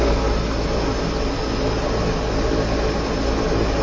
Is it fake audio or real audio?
real